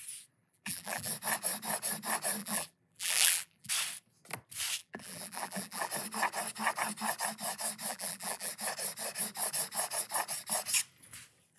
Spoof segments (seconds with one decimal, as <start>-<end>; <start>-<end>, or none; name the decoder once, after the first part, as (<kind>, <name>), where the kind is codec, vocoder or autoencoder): 0.4-1.1 (vocoder, BigVGAN v2); 2.4-3.7; 4.8-5.9; 7.9-8.5